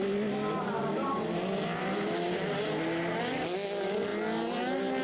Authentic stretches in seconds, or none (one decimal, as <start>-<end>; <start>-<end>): 0.0-5.0